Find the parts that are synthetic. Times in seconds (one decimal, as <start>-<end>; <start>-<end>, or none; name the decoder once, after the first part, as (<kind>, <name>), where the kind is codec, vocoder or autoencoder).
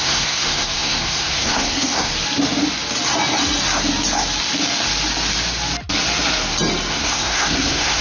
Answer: 0.0-2.1 (codec, SNAC); 6.9-8.0